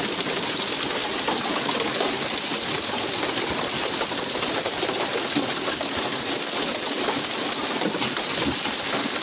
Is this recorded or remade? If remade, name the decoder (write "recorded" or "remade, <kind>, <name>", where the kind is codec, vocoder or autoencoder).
recorded